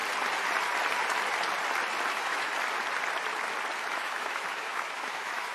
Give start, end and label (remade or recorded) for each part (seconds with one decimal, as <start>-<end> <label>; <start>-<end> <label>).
0.0-2.1 recorded; 2.1-2.5 remade; 2.5-3.9 recorded; 3.9-5.5 remade